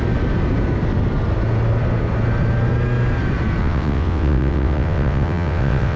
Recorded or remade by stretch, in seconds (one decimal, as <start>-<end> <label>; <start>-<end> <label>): 0.0-3.6 recorded; 3.6-6.0 remade